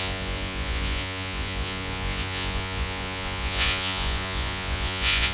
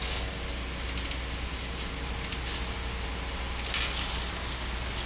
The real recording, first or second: second